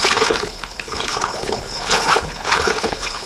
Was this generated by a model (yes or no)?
yes